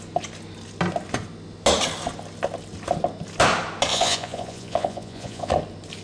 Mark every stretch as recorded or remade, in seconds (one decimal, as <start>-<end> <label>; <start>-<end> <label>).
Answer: 0.0-3.9 recorded; 3.9-5.5 remade; 5.5-6.0 recorded